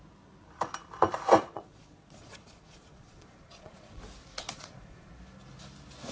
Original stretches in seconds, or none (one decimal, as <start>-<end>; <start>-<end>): 0.0-1.4; 4.0-4.4; 5.1-6.1